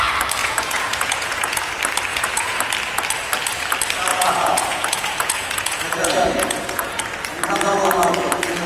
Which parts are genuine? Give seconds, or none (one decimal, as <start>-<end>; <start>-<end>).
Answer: 0.0-0.4; 1.7-2.1; 2.6-4.1; 7.0-8.7